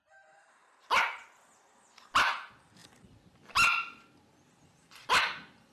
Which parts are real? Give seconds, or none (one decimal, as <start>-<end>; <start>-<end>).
0.0-5.7